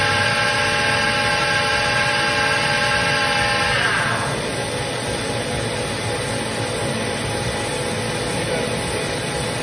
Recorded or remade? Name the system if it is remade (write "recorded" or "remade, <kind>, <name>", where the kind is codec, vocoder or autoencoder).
recorded